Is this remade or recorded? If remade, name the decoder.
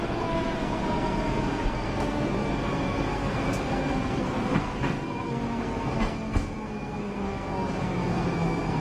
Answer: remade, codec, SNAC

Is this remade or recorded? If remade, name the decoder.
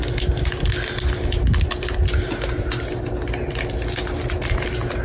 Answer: recorded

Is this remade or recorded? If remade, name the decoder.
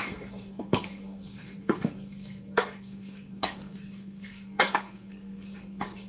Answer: remade, codec, SNAC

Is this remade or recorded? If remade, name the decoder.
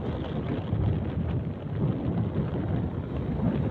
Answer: recorded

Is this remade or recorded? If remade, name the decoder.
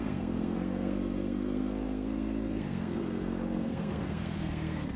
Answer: remade, codec, SNAC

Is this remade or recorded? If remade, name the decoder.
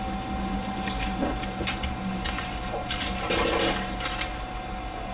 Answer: recorded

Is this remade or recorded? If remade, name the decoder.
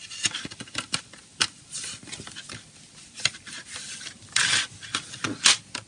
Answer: recorded